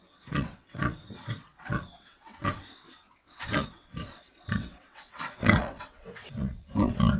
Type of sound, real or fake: fake